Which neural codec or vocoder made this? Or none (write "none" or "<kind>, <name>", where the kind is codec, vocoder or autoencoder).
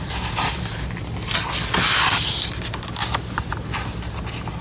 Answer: none